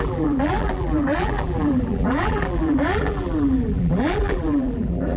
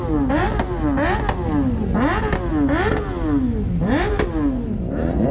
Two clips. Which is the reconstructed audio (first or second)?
first